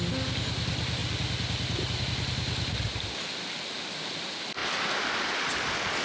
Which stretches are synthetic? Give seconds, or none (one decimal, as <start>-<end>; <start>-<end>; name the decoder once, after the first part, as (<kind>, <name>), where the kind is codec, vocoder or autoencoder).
1.0-2.0 (vocoder, BigVGAN v2); 4.6-5.3